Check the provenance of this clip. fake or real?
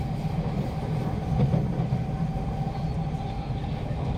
real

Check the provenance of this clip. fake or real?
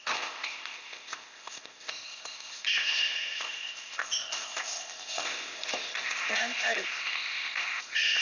fake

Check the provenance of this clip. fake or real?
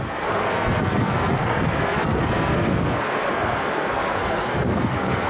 fake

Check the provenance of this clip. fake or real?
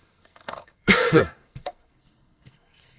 fake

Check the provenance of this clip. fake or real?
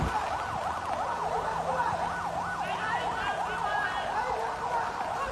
real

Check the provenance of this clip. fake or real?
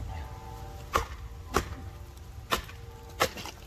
real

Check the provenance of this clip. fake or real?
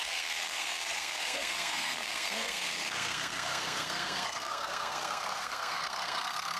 fake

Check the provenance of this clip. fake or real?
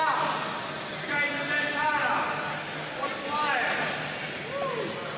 real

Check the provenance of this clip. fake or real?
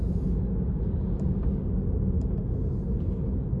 real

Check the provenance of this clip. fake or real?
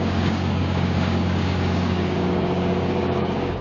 fake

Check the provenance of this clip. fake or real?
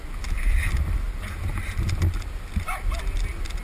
real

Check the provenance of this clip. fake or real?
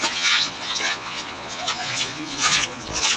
fake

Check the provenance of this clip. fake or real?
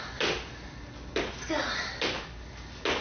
real